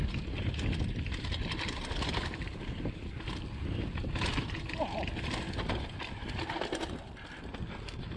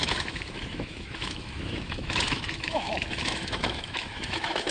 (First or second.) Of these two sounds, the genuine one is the first